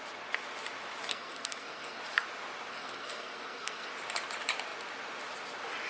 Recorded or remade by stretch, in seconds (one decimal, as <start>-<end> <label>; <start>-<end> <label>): 0.0-1.1 recorded; 1.1-2.0 remade; 2.0-2.7 recorded; 2.7-3.9 remade; 3.9-5.9 recorded